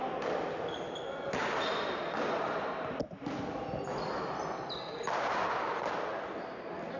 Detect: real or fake real